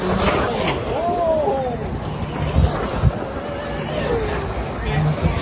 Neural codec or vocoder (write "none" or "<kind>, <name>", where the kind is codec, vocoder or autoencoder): none